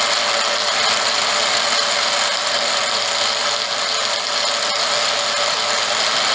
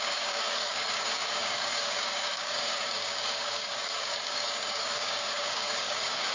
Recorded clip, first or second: first